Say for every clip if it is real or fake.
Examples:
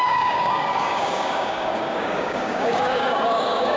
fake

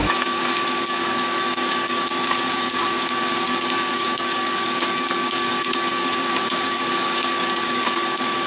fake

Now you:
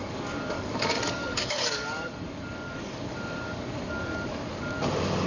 fake